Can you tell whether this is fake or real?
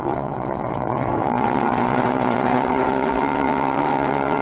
fake